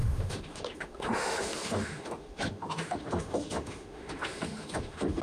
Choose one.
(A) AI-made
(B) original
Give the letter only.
A